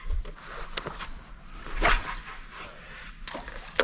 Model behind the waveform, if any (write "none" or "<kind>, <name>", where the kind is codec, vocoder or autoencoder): none